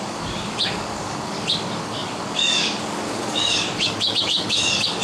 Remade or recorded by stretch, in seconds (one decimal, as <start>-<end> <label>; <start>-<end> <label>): 0.0-5.0 remade